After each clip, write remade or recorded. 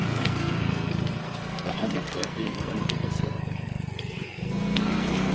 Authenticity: remade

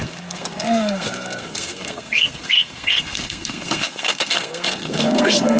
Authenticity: remade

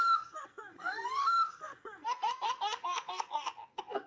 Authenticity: remade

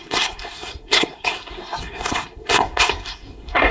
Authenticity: remade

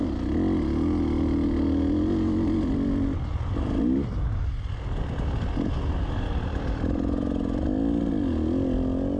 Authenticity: recorded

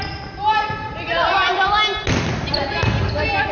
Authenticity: recorded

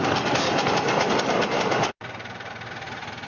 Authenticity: recorded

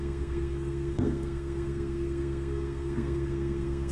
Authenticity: remade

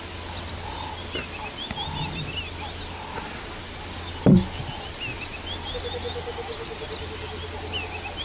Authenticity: recorded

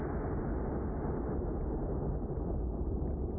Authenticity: recorded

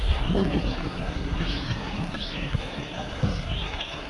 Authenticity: remade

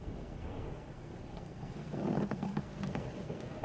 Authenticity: remade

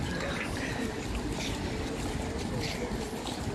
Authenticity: recorded